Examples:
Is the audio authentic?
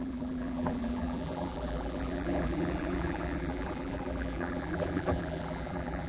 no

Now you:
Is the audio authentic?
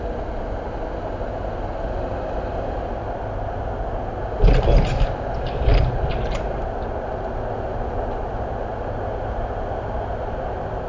yes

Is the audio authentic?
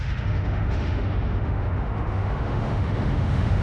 no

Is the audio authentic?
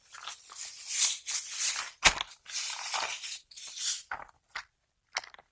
yes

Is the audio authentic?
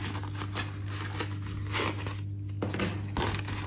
yes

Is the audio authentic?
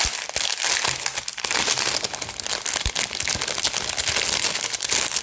yes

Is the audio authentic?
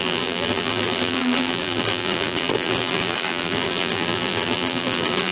no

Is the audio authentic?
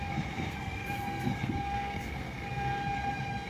no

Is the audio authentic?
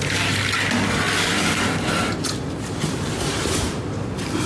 yes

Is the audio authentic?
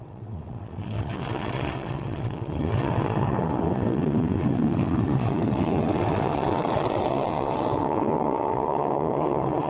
no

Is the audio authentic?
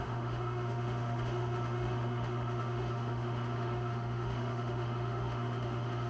no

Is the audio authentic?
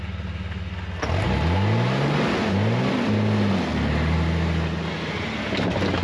yes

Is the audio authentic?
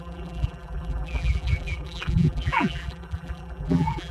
no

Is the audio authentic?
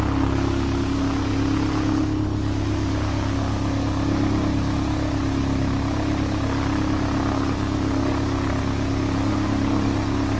yes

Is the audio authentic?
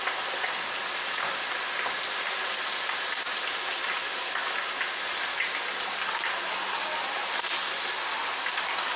yes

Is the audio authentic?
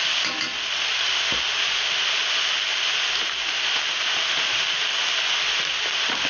yes